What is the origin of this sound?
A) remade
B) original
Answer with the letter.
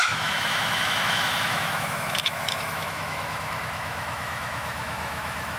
A